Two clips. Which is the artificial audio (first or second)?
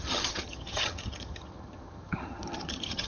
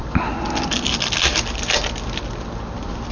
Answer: first